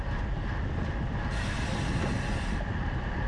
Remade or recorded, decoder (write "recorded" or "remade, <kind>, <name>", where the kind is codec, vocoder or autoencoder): recorded